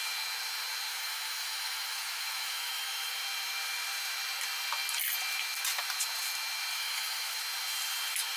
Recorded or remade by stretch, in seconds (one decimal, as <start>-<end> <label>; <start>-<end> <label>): 0.0-0.9 recorded; 0.9-3.1 remade; 3.1-6.7 recorded; 6.7-7.4 remade; 7.4-8.4 recorded